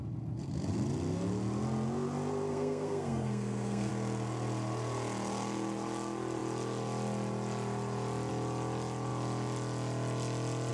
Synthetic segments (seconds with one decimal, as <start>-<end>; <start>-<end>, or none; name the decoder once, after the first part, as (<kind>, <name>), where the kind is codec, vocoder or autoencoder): 2.5-3.9 (codec, SNAC)